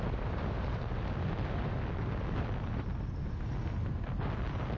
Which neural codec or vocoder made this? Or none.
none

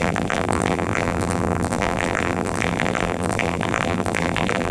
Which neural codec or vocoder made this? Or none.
vocoder, BigVGAN v2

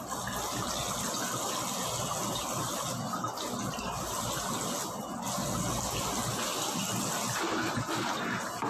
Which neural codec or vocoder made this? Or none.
none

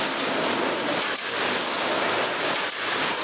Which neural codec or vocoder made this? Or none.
none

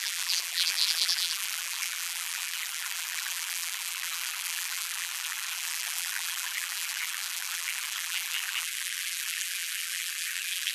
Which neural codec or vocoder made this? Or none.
vocoder, BigVGAN v2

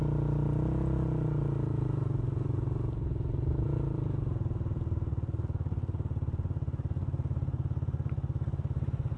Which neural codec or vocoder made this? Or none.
none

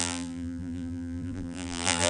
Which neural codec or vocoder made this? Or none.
vocoder, BigVGAN v2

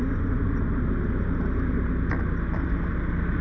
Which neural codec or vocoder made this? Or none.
none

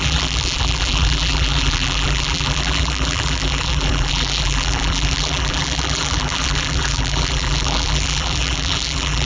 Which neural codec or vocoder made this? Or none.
vocoder, BigVGAN v2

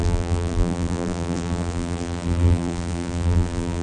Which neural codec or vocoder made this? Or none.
vocoder, BigVGAN v2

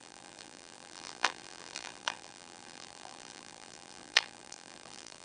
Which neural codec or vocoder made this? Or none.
vocoder, BigVGAN v2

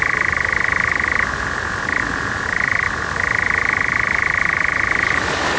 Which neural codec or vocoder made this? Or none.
vocoder, BigVGAN v2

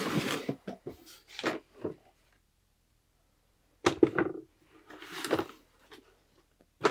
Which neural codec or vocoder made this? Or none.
none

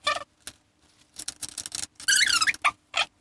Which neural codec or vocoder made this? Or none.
none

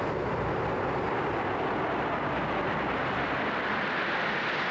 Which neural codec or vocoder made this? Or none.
vocoder, BigVGAN v2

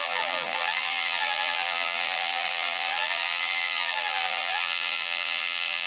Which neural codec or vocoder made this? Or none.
vocoder, BigVGAN v2